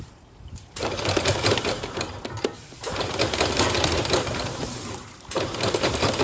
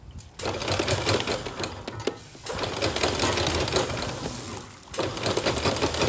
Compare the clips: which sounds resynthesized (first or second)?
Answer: first